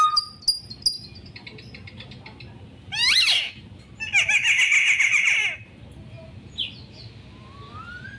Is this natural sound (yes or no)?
yes